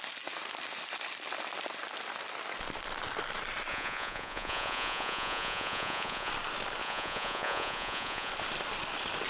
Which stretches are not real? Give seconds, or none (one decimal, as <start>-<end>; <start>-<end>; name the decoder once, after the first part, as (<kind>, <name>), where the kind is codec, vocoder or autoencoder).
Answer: 3.7-6.3 (vocoder, Vocos); 6.8-8.3